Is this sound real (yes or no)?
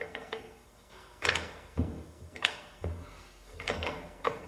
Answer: no